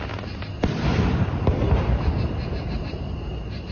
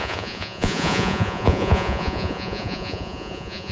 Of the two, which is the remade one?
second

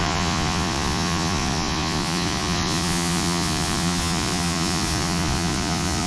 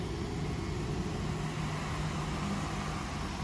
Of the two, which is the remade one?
first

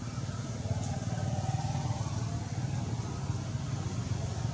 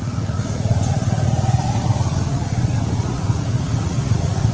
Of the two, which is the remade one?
second